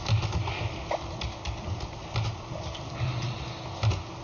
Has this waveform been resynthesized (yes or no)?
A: no